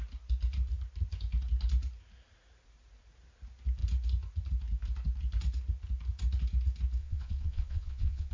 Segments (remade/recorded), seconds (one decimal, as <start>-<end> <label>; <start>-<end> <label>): 0.0-7.0 recorded; 7.0-8.3 remade